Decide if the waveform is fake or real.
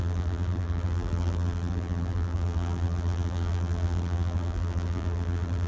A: fake